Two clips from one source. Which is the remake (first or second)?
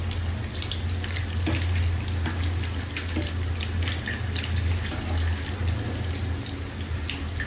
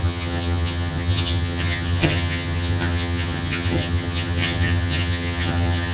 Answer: second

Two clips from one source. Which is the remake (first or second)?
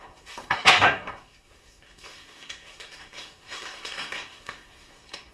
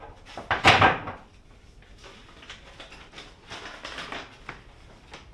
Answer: first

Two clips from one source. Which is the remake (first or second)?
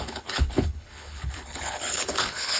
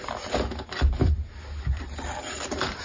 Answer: first